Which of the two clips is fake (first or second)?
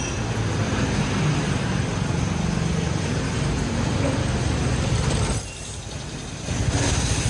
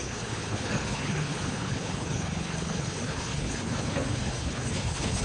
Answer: second